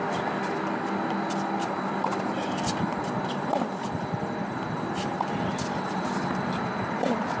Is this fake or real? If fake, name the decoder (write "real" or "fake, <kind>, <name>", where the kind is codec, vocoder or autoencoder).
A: real